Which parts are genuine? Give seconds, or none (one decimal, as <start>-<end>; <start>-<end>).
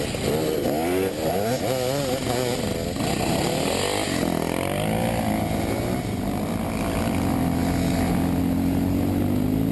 0.0-9.7